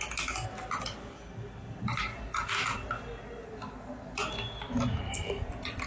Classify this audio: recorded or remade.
recorded